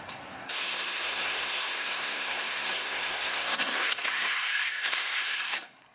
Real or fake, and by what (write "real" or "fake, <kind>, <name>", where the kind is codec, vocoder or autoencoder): fake, codec, SNAC